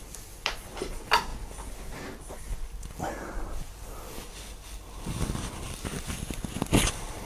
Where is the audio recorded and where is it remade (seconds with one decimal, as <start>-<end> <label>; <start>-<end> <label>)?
0.0-1.3 remade; 1.3-3.9 recorded; 3.9-7.2 remade